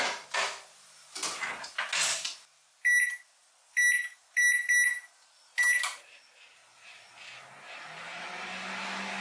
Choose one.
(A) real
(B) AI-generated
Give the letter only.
A